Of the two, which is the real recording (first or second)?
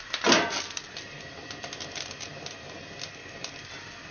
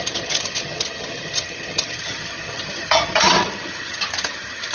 first